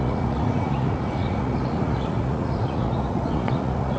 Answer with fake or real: fake